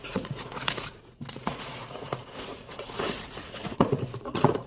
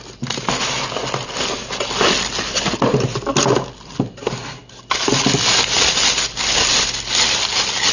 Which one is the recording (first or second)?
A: second